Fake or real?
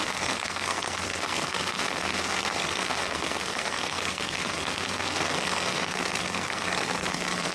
fake